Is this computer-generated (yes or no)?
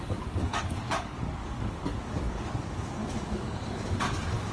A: yes